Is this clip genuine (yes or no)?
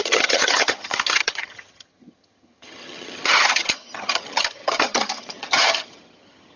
no